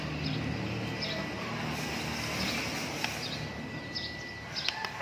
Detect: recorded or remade recorded